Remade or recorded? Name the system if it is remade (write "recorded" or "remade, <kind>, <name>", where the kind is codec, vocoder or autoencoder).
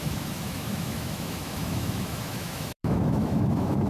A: remade, autoencoder, DAC-VAE